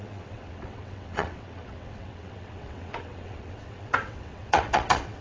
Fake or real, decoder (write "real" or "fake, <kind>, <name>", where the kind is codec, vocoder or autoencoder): fake, vocoder, WaveNeXt